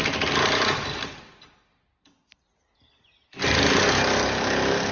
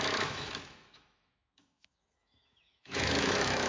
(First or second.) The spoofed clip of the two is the second